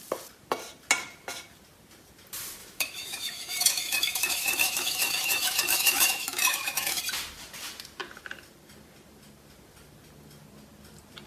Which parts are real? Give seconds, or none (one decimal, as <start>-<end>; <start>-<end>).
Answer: 0.0-2.6; 7.0-11.3